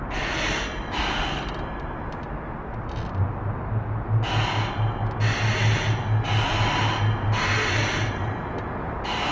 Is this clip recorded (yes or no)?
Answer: yes